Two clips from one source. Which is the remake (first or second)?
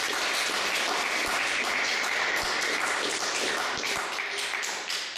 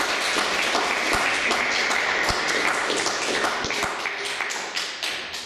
first